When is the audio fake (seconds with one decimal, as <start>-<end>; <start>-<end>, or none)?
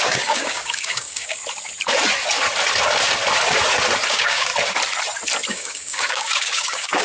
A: 0.0-1.4; 4.1-4.5; 5.5-7.0